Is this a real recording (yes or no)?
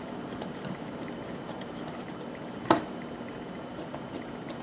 no